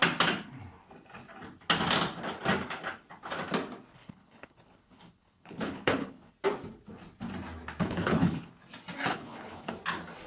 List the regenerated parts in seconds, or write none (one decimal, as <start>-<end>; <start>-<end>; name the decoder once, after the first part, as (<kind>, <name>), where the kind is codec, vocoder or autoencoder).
3.9-6.3 (codec, HILCodec); 7.8-8.5; 9.1-9.7